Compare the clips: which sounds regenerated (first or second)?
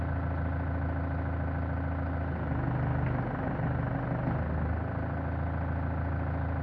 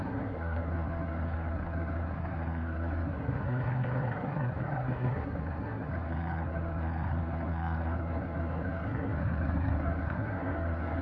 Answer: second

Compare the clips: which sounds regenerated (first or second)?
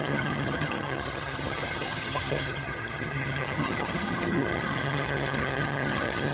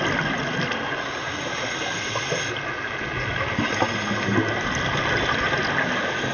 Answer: first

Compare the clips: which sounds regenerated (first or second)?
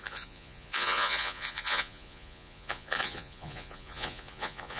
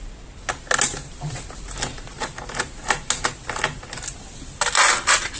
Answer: first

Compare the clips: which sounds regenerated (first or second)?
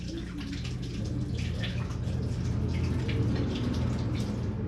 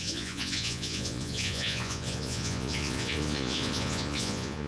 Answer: second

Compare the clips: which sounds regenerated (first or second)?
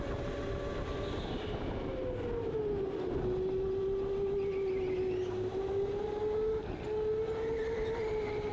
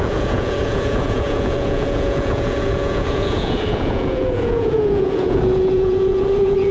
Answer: second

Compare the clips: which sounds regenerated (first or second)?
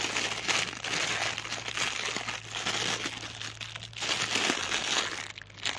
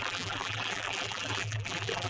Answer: second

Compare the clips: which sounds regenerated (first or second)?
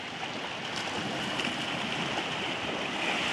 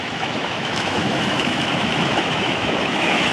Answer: second